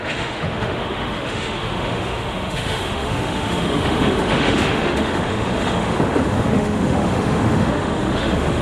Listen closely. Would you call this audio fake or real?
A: fake